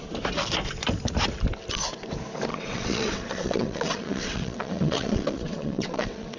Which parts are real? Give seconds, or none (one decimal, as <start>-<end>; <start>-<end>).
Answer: 0.0-2.5